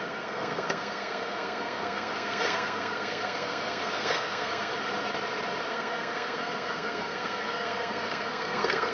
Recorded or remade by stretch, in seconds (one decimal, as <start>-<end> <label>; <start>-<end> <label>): 0.0-4.7 remade; 4.7-5.7 recorded; 5.7-8.9 remade